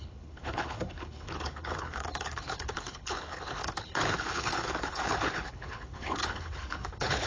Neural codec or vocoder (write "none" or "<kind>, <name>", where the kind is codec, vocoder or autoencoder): codec, HILCodec